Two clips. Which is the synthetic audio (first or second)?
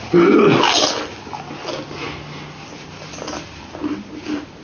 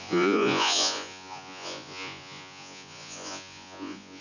second